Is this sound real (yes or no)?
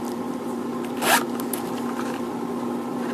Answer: yes